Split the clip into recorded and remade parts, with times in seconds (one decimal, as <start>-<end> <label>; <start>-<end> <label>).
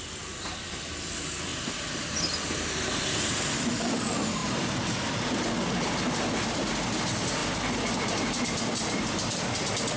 0.0-7.4 remade; 7.4-8.0 recorded; 8.0-10.0 remade